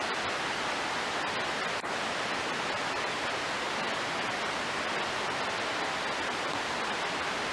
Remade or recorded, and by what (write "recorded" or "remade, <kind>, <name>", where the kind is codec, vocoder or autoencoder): recorded